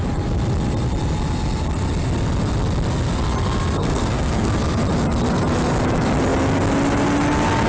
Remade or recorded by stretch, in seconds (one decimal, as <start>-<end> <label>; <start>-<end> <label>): 0.0-3.8 recorded; 3.8-4.5 remade; 4.5-7.7 recorded